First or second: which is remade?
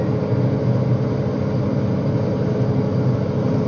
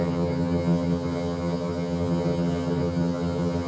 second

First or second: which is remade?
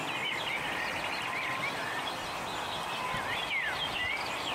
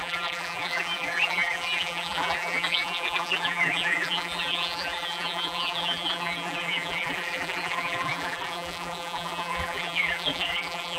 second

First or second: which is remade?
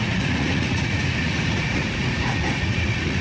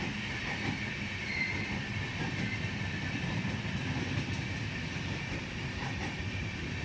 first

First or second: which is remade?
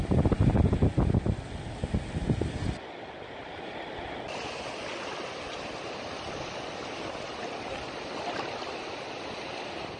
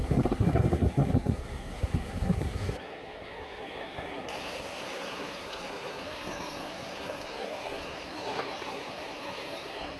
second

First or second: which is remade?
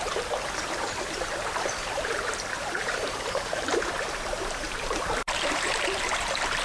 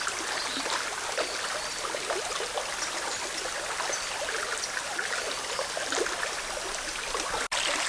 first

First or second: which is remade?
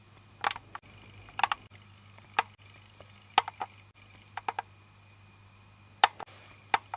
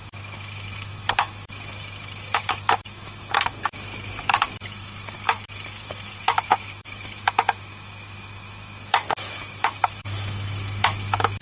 second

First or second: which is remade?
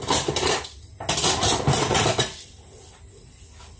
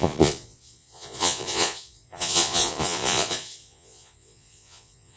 second